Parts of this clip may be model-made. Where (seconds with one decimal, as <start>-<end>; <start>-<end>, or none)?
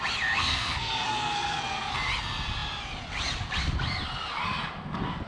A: 0.4-1.9